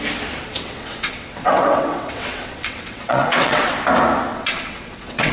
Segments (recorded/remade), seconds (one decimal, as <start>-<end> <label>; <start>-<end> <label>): 0.0-0.5 recorded; 0.5-3.7 remade; 3.7-4.3 recorded; 4.3-5.3 remade